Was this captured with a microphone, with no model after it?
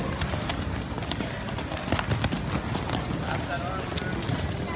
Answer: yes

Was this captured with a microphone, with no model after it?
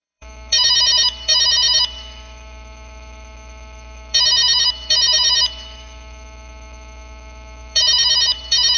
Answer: no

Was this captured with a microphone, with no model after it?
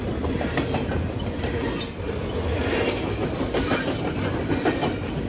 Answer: yes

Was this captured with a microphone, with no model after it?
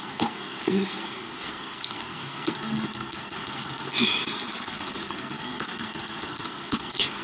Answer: no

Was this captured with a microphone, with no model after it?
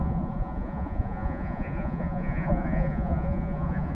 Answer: no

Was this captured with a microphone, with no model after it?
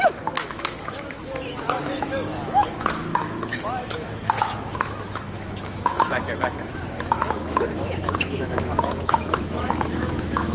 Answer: no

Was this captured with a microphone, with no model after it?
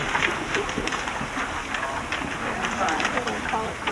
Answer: yes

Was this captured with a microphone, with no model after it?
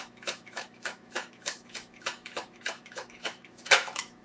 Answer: no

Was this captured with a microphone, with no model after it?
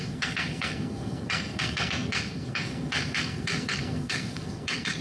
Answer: no